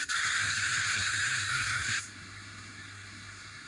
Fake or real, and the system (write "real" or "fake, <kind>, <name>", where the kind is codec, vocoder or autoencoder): fake, codec, SNAC